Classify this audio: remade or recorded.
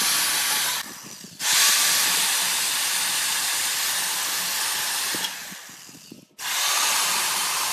recorded